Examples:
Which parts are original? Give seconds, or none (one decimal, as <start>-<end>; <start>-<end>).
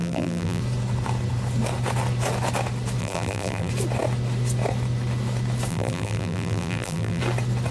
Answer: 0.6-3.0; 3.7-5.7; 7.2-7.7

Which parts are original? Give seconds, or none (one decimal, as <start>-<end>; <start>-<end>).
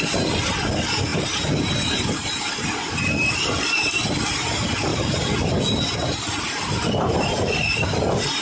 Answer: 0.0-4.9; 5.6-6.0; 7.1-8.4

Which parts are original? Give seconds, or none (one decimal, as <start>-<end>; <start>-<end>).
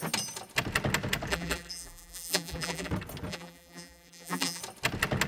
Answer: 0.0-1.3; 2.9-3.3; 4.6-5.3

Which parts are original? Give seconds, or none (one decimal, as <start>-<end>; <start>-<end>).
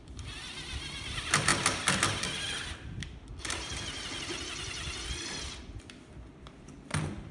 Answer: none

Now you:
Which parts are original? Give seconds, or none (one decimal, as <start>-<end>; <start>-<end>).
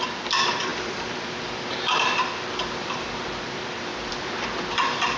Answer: 3.9-4.7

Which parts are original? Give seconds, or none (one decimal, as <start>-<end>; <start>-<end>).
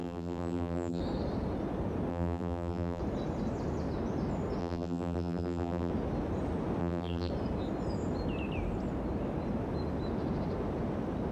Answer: 1.0-2.1; 3.0-4.6; 5.9-6.8; 7.3-11.3